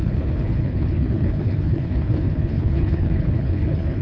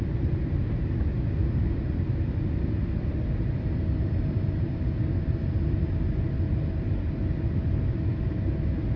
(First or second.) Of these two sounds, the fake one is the first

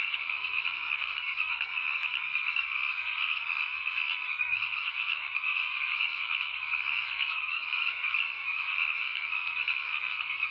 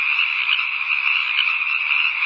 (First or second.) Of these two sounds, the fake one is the first